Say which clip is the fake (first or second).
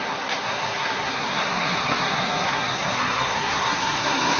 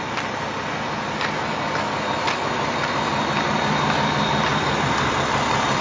first